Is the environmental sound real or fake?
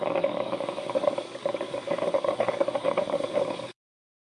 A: fake